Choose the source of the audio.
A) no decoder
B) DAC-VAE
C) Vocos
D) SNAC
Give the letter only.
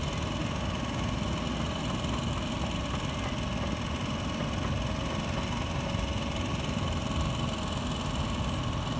A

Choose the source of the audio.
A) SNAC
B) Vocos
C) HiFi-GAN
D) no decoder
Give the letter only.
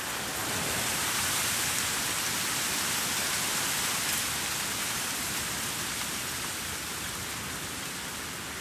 D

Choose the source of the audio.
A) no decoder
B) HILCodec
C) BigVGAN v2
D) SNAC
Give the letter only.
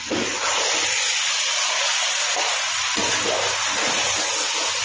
A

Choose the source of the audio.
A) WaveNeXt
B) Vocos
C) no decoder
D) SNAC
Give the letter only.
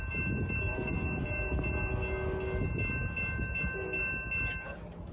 C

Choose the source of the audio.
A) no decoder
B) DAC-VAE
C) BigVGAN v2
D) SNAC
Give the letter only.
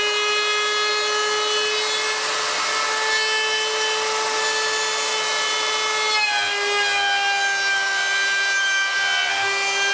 A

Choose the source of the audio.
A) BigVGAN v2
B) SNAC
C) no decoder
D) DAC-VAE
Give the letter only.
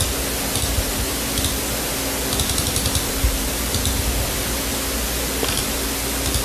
C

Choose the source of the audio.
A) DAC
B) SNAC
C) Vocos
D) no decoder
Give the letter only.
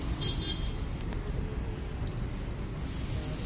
D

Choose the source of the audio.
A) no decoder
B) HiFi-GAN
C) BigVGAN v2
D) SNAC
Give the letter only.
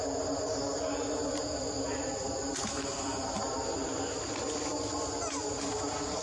A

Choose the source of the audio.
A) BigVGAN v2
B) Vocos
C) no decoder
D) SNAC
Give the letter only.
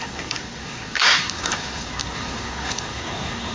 D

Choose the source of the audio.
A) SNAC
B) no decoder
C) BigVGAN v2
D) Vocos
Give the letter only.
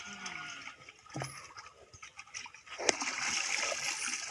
B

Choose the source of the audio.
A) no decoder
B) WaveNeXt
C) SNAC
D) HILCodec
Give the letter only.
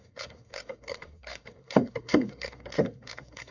C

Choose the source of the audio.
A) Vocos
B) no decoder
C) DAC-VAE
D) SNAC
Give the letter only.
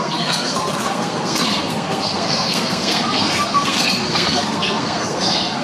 D